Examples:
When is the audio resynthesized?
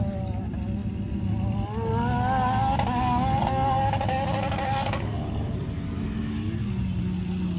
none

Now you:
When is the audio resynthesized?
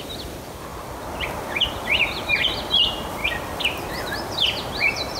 3.2-3.9 (vocoder, BigVGAN v2)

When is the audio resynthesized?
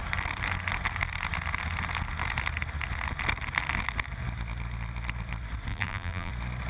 5.7-6.3 (vocoder, BigVGAN v2)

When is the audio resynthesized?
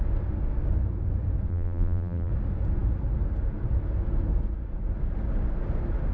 1.5-2.3 (vocoder, BigVGAN v2)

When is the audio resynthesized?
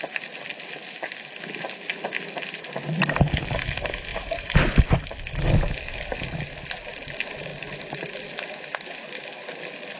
none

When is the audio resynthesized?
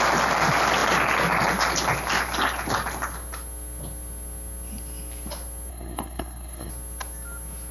5.7-6.7 (codec, SNAC)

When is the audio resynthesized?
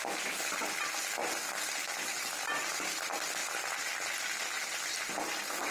1.2-2.2 (vocoder, BigVGAN v2); 3.4-4.6